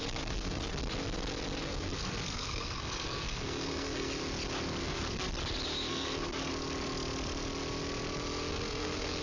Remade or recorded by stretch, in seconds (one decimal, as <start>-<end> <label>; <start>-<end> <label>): 0.0-0.8 remade; 0.8-1.6 recorded; 1.6-4.2 remade; 4.2-4.8 recorded; 4.8-5.3 remade; 5.3-5.9 recorded; 5.9-6.5 remade; 6.5-8.5 recorded; 8.5-9.2 remade